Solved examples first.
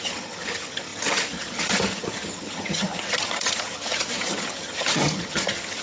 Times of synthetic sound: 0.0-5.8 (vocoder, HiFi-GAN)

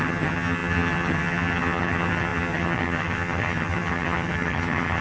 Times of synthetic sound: 0.0-5.0 (vocoder, HiFi-GAN)

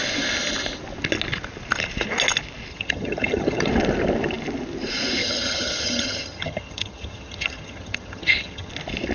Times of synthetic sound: 2.7-3.7 (vocoder, HiFi-GAN); 5.2-8.7

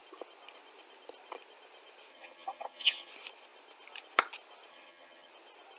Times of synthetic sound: 2.1-3.1 (vocoder, HiFi-GAN); 4.7-5.3

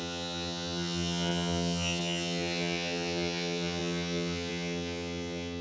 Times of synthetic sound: 0.0-5.6 (vocoder, HiFi-GAN)

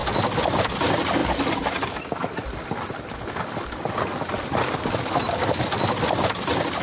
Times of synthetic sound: none

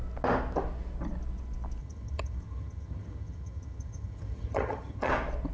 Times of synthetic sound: 1.8-5.1 (vocoder, HiFi-GAN)